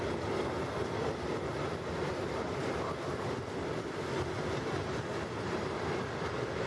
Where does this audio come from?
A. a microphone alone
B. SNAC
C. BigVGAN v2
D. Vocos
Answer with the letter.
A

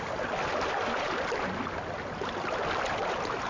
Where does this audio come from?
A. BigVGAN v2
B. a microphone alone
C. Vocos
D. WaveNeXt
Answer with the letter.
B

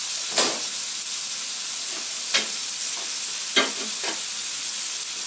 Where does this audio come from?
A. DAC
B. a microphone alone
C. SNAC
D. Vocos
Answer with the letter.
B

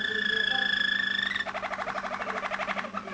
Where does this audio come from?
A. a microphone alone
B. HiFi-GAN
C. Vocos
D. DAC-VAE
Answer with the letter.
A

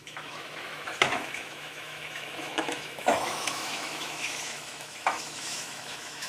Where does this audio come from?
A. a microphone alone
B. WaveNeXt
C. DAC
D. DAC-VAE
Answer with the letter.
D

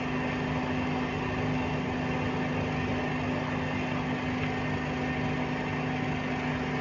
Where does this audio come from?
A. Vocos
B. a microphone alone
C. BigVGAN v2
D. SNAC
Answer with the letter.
B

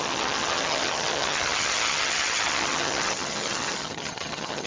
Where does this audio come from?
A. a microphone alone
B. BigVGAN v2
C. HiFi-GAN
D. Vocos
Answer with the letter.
C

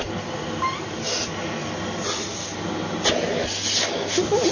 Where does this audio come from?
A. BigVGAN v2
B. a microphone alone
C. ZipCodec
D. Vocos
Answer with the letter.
B